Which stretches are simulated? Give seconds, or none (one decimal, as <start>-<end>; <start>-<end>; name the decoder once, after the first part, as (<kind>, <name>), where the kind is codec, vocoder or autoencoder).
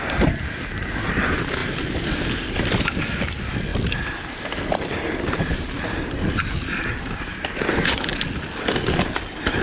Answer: none